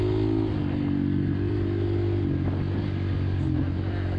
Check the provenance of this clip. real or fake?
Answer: real